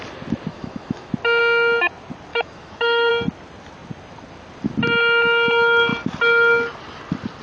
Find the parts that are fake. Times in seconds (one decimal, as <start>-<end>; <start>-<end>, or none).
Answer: 0.5-1.1; 2.3-3.1